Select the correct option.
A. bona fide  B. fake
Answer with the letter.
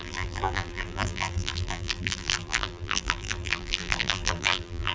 B